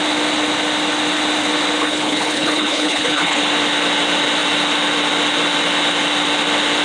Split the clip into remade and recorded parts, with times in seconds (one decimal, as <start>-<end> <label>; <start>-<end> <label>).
0.0-1.8 recorded; 1.8-3.4 remade; 3.4-6.8 recorded